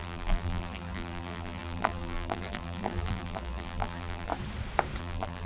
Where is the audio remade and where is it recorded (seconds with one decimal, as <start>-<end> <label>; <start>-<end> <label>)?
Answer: 0.0-4.3 remade; 4.3-5.0 recorded; 5.0-5.5 remade